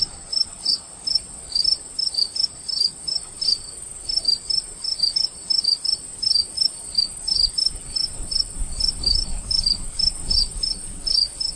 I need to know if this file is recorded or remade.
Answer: remade